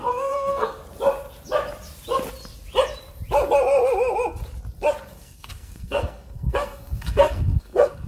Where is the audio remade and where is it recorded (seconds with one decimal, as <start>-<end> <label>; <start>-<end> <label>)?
0.0-0.8 remade; 0.8-5.1 recorded; 5.1-8.1 remade